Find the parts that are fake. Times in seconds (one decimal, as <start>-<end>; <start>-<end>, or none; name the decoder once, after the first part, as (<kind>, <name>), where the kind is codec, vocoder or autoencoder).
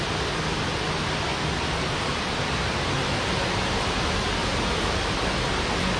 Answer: none